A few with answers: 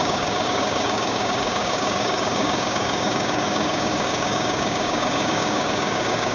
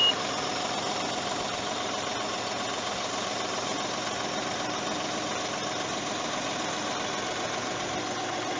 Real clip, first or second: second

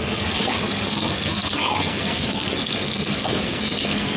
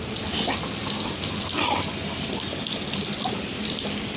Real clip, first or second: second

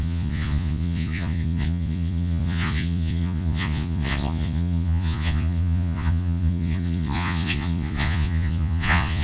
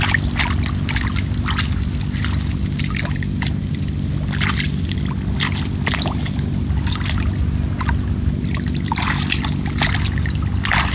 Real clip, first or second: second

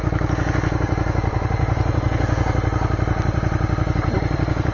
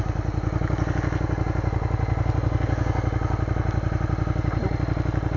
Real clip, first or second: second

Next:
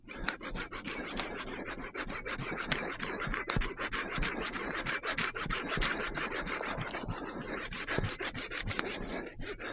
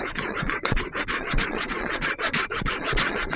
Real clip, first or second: first